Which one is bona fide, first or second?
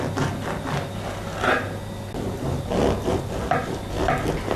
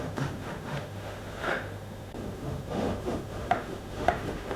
first